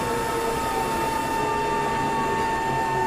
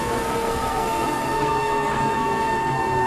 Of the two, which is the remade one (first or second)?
second